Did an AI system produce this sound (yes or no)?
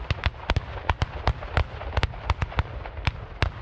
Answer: no